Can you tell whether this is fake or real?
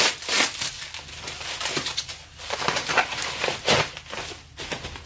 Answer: real